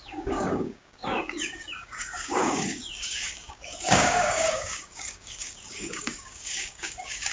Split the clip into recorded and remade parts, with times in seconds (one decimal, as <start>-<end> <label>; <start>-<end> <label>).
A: 0.0-7.3 remade